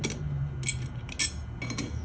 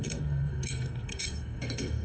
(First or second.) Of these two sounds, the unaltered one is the first